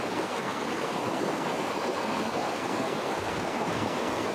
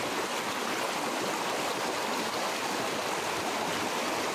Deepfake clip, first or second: first